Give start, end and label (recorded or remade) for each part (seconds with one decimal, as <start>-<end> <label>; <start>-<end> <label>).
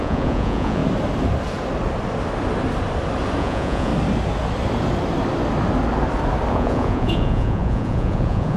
0.0-0.8 remade; 0.8-3.4 recorded; 3.4-3.9 remade; 3.9-6.5 recorded; 6.5-8.6 remade